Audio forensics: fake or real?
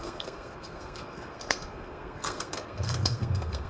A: fake